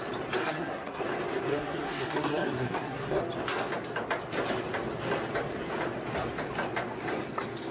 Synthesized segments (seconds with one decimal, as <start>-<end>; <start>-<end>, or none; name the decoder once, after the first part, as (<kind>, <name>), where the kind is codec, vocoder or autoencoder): 0.4-1.0 (codec, SNAC); 1.5-3.2